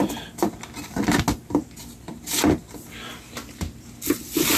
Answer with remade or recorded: recorded